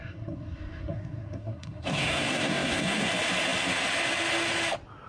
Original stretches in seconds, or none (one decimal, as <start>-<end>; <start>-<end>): 3.1-5.1